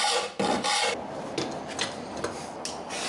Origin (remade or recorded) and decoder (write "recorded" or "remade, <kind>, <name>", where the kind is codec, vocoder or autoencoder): recorded